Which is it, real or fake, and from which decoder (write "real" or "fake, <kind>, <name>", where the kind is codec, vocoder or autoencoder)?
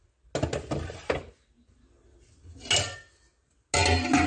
real